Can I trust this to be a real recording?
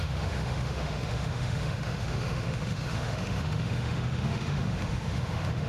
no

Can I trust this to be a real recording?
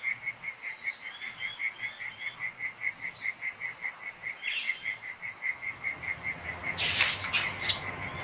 yes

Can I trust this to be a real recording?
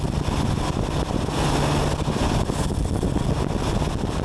yes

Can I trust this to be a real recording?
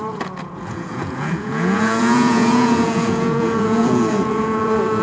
no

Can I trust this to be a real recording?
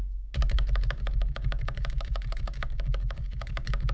no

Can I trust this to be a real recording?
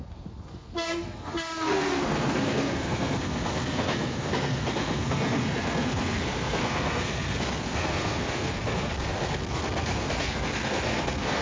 no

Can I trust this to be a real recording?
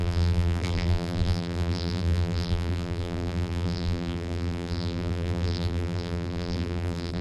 no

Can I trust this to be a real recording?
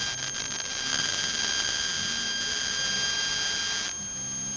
yes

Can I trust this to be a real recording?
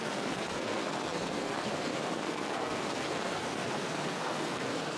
no